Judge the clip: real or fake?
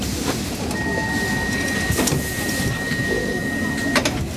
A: real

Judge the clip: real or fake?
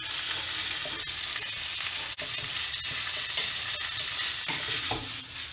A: real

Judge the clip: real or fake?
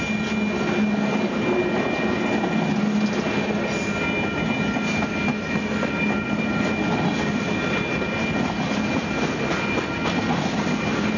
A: real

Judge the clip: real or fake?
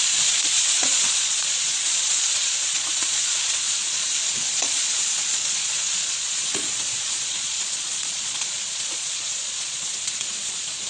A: fake